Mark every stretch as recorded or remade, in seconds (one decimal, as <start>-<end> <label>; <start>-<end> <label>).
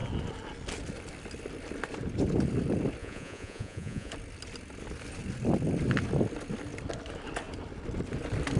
0.0-3.0 recorded; 3.0-4.1 remade; 4.1-8.6 recorded